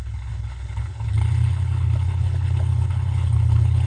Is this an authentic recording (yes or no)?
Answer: no